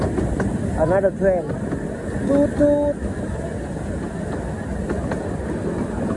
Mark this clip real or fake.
real